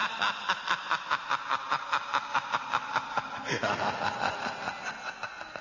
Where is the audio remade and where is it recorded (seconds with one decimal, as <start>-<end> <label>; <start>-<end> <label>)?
0.0-5.6 recorded